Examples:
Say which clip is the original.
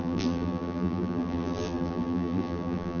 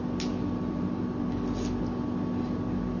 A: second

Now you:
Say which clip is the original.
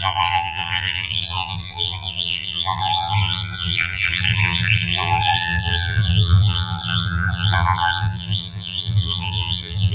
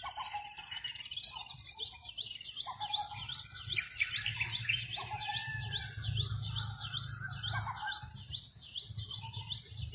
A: second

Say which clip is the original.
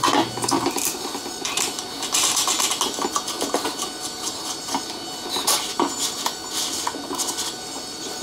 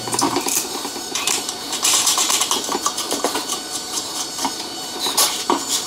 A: first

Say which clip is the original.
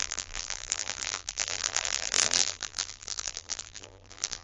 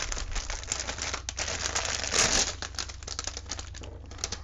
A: second